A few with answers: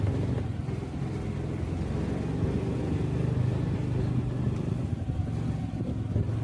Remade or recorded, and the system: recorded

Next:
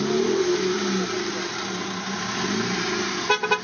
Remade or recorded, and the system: recorded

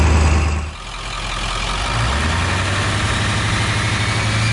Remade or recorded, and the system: recorded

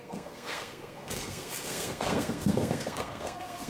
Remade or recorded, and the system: remade, codec, SNAC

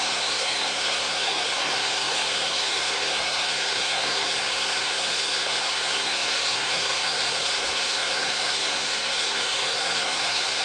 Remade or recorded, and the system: remade, codec, SNAC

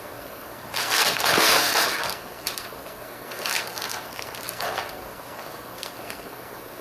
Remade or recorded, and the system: remade, codec, SNAC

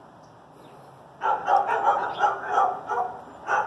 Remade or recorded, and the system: recorded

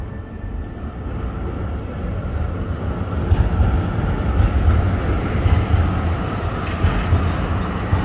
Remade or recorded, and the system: recorded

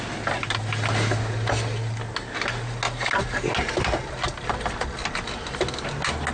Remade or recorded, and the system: recorded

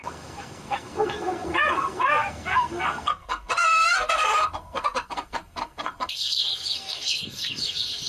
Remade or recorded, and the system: remade, codec, SNAC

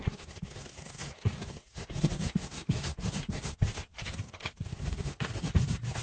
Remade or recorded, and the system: remade, codec, SNAC